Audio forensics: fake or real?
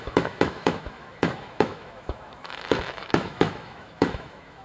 fake